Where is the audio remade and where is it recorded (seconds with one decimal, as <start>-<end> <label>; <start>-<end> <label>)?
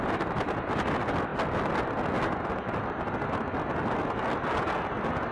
0.0-5.3 recorded